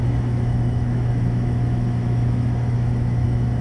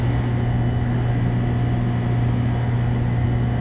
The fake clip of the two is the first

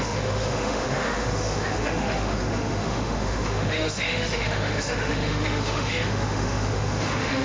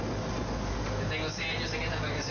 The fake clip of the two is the first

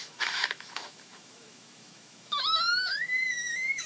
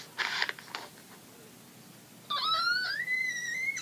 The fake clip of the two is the first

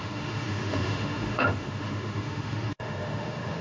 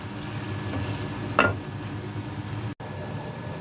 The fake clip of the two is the first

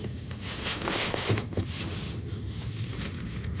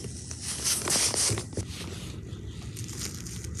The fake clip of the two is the first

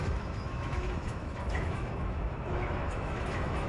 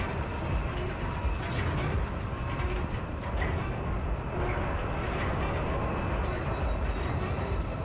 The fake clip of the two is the first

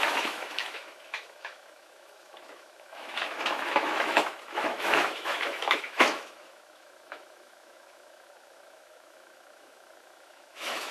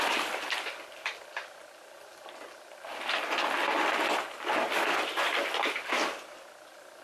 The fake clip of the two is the first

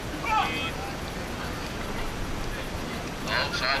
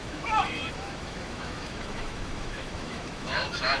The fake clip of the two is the second